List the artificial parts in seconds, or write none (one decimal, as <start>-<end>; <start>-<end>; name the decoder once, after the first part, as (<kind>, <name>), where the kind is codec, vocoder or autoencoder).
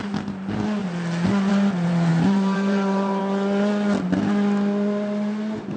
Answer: 2.1-3.2 (vocoder, BigVGAN v2)